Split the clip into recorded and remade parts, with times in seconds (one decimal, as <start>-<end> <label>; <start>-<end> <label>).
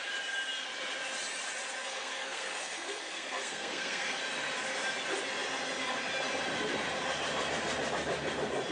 0.0-1.8 recorded; 1.8-4.2 remade; 4.2-8.7 recorded